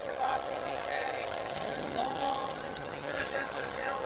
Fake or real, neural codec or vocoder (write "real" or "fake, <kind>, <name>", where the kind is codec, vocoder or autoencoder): fake, vocoder, HiFi-GAN